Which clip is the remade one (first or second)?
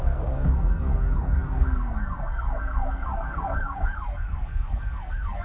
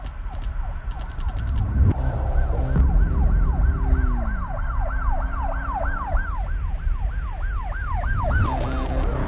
first